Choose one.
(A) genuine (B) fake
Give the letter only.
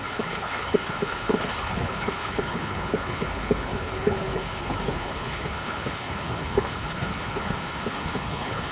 B